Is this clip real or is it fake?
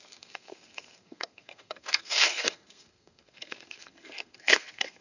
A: fake